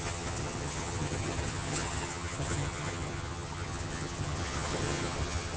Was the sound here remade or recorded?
remade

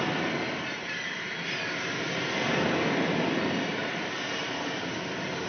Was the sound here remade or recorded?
recorded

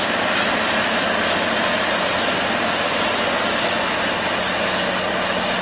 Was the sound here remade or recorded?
recorded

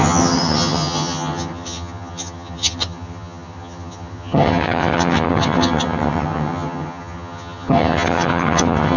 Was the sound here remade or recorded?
remade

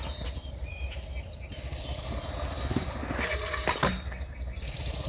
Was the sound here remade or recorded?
recorded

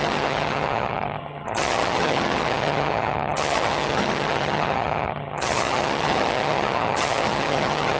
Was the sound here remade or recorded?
remade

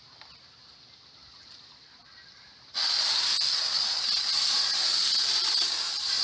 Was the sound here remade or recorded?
recorded